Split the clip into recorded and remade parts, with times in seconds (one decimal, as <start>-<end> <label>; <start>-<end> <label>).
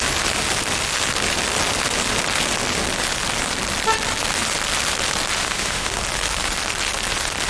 0.0-5.4 recorded; 5.4-6.0 remade; 6.0-7.5 recorded